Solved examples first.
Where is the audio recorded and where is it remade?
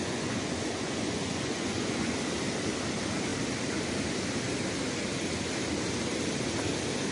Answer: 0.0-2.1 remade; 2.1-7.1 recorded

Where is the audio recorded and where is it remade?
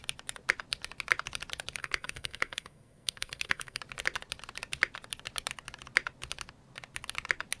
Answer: 0.0-1.8 recorded; 1.8-3.8 remade; 3.8-7.6 recorded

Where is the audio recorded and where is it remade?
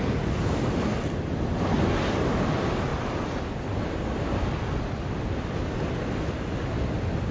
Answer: 0.0-7.3 recorded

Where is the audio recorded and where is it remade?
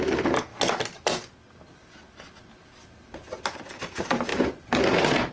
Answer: 0.0-5.3 recorded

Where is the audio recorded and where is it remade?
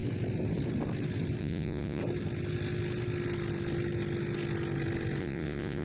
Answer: 0.0-1.4 recorded; 1.4-2.0 remade; 2.0-5.2 recorded; 5.2-5.8 remade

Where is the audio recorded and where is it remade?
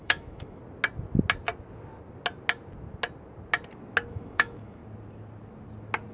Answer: 0.0-0.6 remade; 0.6-4.1 recorded; 4.1-4.8 remade; 4.8-6.1 recorded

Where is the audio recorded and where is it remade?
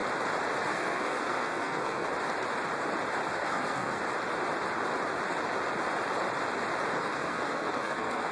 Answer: 0.0-0.7 recorded; 0.7-2.1 remade; 2.1-3.3 recorded; 3.3-4.0 remade; 4.0-7.0 recorded; 7.0-8.3 remade